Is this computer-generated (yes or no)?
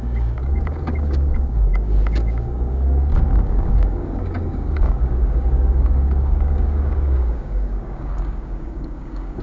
yes